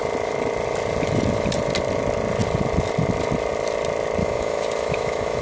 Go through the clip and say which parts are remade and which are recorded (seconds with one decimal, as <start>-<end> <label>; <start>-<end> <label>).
0.0-4.2 recorded; 4.2-5.4 remade